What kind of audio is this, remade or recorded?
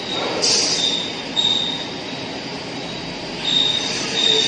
recorded